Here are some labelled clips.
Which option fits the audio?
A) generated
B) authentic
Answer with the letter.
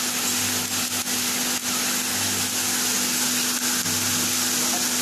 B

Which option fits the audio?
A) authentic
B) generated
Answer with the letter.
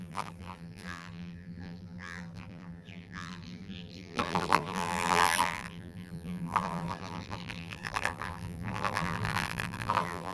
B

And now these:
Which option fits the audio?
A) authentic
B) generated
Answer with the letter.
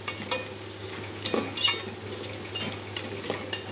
A